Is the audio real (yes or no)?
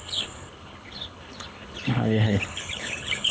no